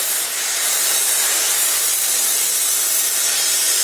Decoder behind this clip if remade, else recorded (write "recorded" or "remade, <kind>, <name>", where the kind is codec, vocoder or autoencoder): recorded